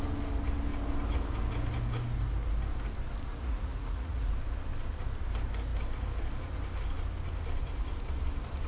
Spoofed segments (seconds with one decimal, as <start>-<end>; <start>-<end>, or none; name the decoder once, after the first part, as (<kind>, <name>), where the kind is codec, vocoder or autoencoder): 3.3-4.3 (vocoder, Vocos)